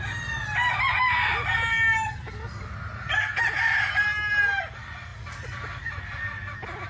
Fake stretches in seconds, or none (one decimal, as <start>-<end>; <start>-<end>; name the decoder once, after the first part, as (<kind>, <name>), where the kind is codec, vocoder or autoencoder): none